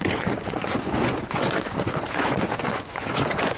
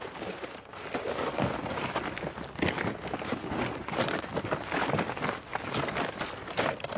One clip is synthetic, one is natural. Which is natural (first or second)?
second